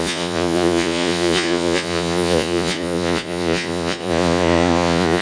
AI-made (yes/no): yes